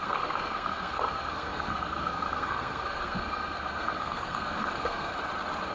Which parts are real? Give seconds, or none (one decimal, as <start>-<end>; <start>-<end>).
5.1-5.7